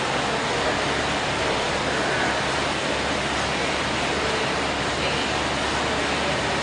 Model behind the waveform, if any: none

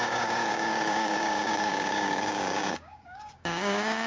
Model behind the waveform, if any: codec, DAC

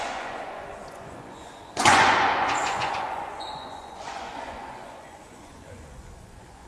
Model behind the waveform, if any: vocoder, Vocos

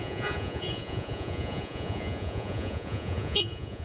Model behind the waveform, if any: vocoder, Vocos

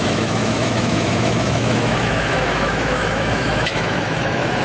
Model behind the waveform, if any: autoencoder, DAC-VAE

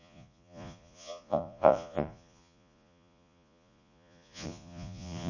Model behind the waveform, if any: vocoder, Vocos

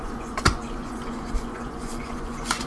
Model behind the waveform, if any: vocoder, Vocos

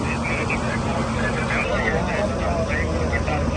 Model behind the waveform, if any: none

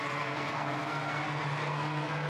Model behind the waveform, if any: codec, SNAC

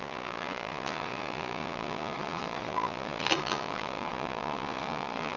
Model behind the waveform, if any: vocoder, Vocos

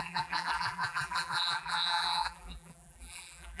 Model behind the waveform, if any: vocoder, BigVGAN v2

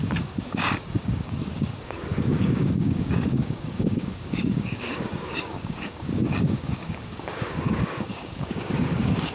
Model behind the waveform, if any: codec, DAC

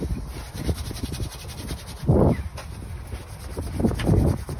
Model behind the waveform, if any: none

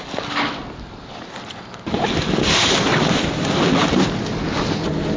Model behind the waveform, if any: none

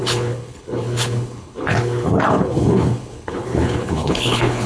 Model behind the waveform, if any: codec, HILCodec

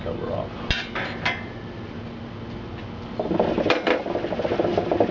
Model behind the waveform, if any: none